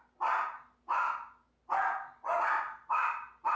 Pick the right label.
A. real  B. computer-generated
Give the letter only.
A